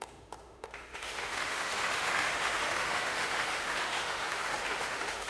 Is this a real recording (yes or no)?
no